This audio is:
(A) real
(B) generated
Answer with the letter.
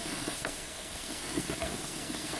B